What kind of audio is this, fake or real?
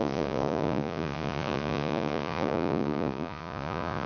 fake